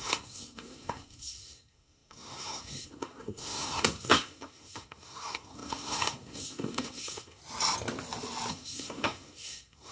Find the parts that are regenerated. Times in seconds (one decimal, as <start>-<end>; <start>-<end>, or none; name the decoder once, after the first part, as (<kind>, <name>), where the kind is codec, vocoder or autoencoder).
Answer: 0.0-7.4 (codec, SNAC); 8.5-9.9